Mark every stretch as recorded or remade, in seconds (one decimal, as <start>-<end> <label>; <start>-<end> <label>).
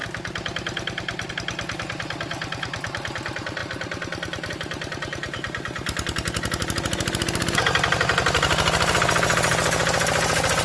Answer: 0.0-10.6 recorded